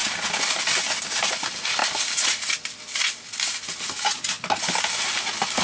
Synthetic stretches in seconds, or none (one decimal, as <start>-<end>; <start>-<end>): none